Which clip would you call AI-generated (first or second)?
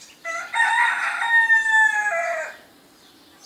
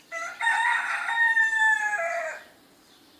second